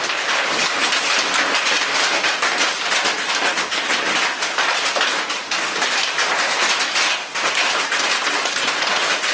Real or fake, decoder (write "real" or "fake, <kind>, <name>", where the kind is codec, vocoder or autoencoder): real